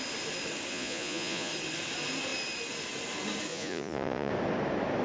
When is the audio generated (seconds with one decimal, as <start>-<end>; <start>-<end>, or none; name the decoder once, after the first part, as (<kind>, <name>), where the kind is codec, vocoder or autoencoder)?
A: 0.7-1.5 (vocoder, Vocos); 3.5-4.3